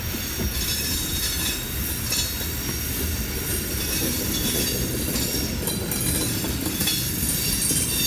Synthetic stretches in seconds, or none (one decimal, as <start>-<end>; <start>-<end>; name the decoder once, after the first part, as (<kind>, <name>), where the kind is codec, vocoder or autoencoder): none